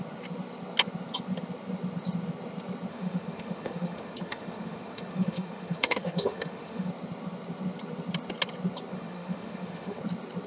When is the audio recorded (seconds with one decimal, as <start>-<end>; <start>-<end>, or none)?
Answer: 0.0-2.9; 6.9-8.9; 10.0-10.5